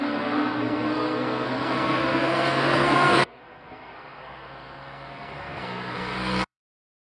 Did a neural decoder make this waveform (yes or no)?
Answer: yes